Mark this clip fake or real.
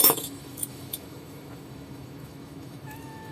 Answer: fake